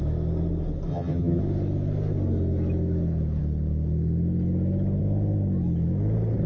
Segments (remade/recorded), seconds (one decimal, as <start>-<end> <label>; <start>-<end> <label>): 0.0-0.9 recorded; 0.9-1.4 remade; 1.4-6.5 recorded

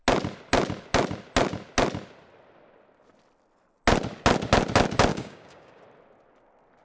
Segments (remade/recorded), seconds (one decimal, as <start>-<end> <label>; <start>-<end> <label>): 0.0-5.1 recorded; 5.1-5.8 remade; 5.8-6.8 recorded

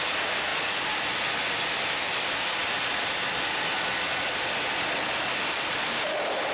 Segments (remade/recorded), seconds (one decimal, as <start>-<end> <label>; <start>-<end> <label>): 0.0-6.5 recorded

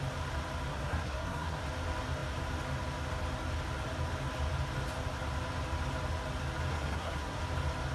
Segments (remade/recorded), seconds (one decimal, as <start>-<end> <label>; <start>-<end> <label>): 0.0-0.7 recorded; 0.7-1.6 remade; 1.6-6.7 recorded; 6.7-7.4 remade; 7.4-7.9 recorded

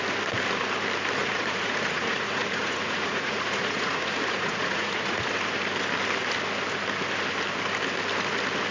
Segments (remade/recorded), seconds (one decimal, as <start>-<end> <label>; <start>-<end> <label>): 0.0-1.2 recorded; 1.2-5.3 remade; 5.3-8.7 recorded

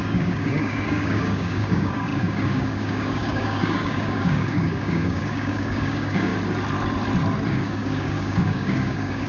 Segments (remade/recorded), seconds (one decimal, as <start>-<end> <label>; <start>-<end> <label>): 0.0-6.3 remade; 6.3-7.5 recorded; 7.5-9.3 remade

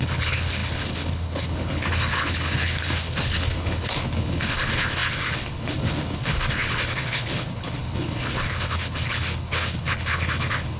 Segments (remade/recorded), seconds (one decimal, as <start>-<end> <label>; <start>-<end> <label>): 0.0-10.8 remade